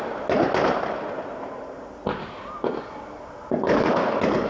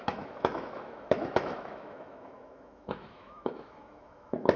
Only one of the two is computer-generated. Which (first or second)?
second